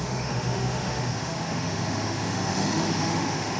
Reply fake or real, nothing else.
fake